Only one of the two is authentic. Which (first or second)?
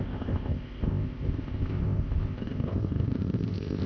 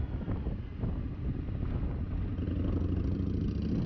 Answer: second